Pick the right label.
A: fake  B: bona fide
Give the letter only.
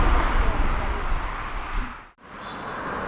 B